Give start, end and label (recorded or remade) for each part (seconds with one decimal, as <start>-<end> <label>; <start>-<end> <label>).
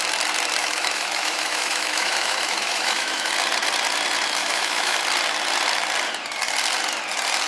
0.0-0.6 recorded; 0.6-3.3 remade; 3.3-4.4 recorded; 4.4-5.0 remade; 5.0-7.5 recorded